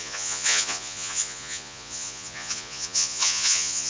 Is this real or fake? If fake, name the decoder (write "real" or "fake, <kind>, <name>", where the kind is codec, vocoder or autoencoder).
fake, vocoder, Vocos